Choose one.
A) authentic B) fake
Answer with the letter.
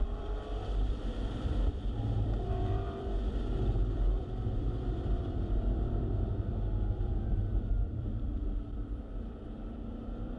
B